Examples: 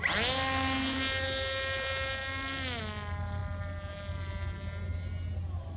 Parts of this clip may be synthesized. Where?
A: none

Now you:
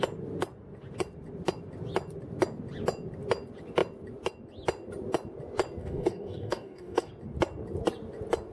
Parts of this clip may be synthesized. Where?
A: 5.8-7.1 (codec, DAC)